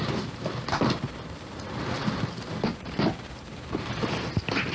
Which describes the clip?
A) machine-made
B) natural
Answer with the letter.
A